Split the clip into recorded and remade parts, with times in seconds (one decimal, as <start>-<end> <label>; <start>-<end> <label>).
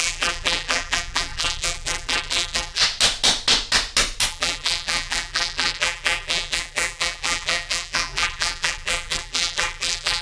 0.0-2.8 remade; 2.8-4.3 recorded; 4.3-10.2 remade